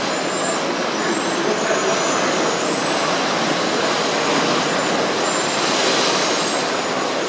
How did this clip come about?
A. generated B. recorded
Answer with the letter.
B